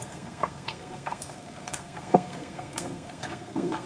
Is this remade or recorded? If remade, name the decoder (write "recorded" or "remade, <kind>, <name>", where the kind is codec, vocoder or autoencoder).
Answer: remade, codec, SNAC